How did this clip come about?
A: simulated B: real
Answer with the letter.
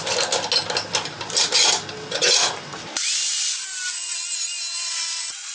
B